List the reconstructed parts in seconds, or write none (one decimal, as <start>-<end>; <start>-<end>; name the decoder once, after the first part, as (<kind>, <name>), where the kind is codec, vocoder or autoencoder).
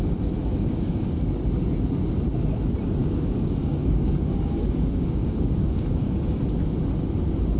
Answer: 0.4-1.2 (codec, DAC); 3.0-6.4